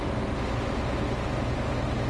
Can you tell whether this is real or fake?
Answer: real